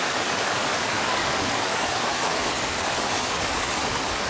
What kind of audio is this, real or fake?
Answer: fake